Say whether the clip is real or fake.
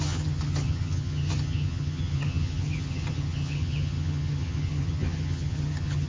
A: fake